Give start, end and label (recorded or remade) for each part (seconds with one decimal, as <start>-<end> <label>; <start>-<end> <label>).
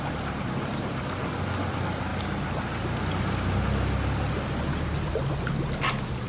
0.0-6.3 recorded